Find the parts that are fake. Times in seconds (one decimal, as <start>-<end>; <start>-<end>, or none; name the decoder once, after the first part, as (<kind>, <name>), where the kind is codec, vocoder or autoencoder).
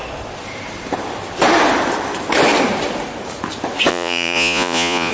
3.9-5.1 (vocoder, Vocos)